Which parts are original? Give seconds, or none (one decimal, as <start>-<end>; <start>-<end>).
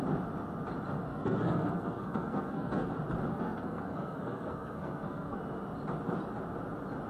0.0-1.1; 2.9-3.3; 5.4-7.1